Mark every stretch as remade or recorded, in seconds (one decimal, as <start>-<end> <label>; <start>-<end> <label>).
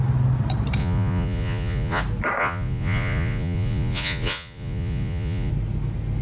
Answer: 0.0-0.8 recorded; 0.8-2.0 remade; 2.0-2.4 recorded; 2.4-5.5 remade; 5.5-6.2 recorded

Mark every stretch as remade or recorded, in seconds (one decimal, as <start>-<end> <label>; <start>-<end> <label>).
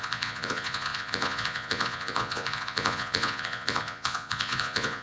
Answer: 0.0-5.0 remade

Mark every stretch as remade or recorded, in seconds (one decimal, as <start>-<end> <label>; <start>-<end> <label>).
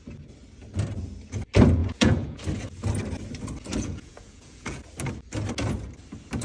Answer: 0.0-1.8 recorded; 1.8-2.4 remade; 2.4-3.7 recorded; 3.7-4.8 remade; 4.8-6.4 recorded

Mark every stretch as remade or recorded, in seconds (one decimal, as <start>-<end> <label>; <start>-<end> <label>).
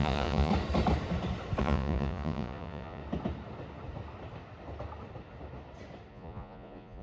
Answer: 0.0-0.5 remade; 0.5-1.6 recorded; 1.6-3.0 remade; 3.0-6.1 recorded; 6.1-7.0 remade